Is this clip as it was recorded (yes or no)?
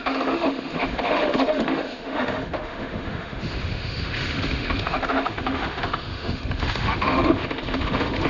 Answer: no